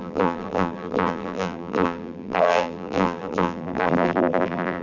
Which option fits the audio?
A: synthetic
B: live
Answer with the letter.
A